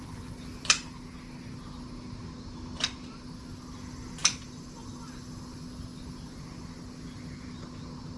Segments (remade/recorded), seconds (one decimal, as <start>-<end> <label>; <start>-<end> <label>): 0.0-8.2 recorded